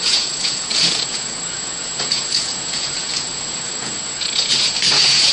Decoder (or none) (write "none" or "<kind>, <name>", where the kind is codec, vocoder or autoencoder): vocoder, Vocos